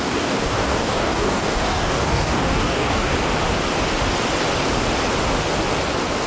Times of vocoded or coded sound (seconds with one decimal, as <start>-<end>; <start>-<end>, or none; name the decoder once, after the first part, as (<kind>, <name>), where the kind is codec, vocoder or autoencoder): 0.0-3.1 (codec, DAC)